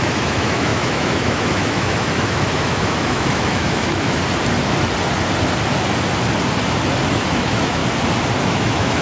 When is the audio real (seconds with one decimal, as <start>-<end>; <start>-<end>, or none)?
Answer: 4.2-7.2; 7.8-8.4